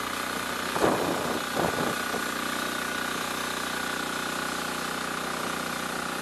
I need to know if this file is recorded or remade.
recorded